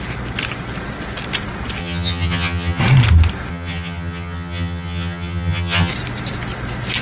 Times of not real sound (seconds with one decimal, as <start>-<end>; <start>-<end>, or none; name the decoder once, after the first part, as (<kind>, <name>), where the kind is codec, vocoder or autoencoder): 1.8-2.8 (vocoder, HiFi-GAN); 3.5-5.9